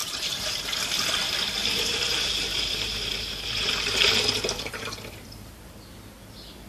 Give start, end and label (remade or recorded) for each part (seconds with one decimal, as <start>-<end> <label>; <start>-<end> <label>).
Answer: 0.0-0.6 remade; 0.6-1.6 recorded; 1.6-5.6 remade; 5.6-6.7 recorded